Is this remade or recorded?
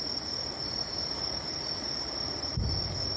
recorded